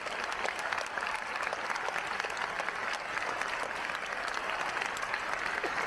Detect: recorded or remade recorded